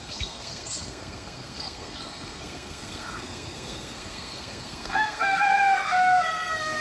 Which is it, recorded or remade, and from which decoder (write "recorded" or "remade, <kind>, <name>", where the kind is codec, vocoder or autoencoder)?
remade, codec, SNAC